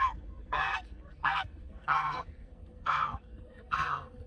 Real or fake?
fake